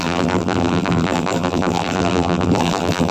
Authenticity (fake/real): fake